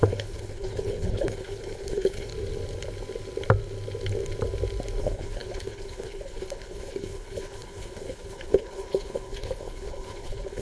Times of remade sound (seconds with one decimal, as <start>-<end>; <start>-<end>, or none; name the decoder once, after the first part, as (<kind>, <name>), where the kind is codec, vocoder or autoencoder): 0.0-2.3 (codec, HILCodec); 5.0-10.6